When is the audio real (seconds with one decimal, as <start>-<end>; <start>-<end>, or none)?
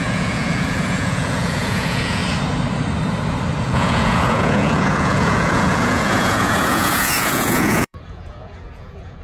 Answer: 2.2-3.6